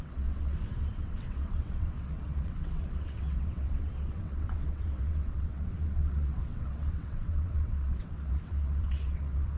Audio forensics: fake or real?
fake